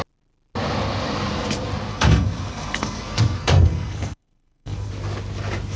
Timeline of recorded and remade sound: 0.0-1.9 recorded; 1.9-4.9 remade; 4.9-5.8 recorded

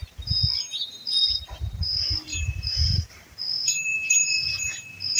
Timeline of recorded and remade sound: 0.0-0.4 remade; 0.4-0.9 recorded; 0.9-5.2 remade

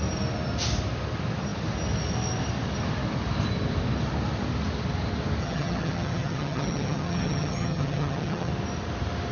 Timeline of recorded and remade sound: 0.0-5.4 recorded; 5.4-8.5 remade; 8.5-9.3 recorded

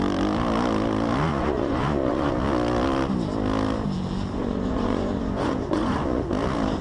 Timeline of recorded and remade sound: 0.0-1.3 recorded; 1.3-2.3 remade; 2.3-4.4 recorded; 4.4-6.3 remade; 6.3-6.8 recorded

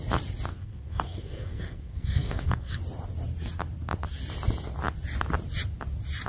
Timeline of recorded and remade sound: 0.0-0.5 recorded; 0.5-2.8 remade; 2.8-6.3 recorded